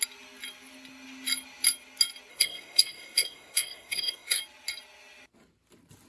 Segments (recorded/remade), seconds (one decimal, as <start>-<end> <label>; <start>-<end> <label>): 0.0-2.3 recorded; 2.3-4.4 remade; 4.4-6.1 recorded